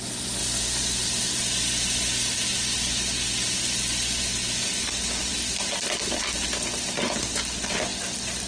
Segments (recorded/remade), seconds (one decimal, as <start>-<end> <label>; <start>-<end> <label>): 0.0-8.5 recorded